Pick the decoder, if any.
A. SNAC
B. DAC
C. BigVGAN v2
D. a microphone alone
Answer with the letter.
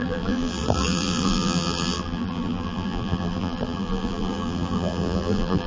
C